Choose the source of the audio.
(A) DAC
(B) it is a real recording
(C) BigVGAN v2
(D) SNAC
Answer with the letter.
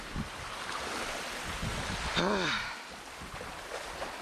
B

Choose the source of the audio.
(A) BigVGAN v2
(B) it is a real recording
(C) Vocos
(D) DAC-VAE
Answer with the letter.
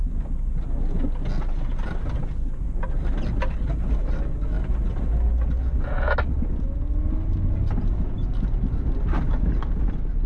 B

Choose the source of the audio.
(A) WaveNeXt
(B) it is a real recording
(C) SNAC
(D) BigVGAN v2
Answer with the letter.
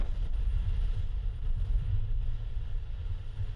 D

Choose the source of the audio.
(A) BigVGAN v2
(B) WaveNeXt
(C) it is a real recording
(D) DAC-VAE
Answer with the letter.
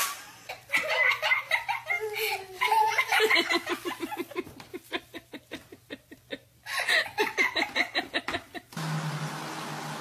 C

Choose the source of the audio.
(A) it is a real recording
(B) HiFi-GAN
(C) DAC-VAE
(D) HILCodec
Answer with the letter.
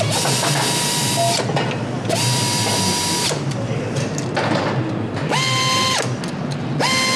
A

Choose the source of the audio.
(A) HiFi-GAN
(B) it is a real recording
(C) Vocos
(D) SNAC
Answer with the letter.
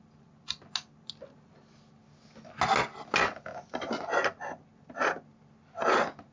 B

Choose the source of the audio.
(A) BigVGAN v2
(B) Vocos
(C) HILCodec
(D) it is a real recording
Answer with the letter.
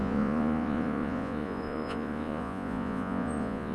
B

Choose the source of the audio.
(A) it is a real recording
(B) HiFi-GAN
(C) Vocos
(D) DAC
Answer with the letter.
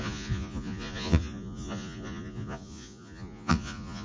C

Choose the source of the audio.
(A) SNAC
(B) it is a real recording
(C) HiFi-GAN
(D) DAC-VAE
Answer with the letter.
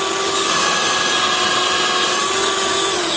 B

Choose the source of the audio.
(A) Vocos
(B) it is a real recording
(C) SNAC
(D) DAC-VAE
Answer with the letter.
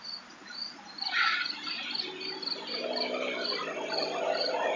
B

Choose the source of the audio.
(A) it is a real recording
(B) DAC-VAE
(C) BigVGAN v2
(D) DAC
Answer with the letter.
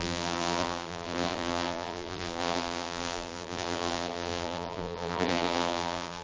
C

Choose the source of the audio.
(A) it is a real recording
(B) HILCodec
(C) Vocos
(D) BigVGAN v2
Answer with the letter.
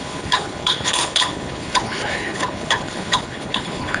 B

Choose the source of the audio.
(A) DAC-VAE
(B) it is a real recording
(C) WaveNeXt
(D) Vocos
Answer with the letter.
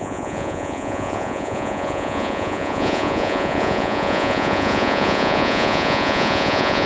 D